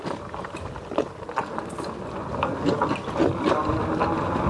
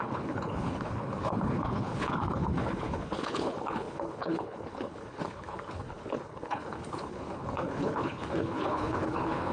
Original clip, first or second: first